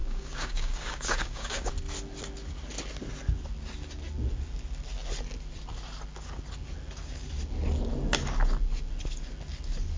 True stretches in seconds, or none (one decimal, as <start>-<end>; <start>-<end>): 1.7-10.0